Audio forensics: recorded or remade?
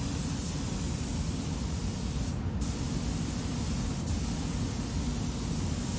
recorded